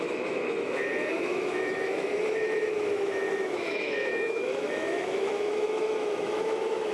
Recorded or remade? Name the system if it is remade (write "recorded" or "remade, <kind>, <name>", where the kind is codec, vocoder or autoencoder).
remade, autoencoder, DAC-VAE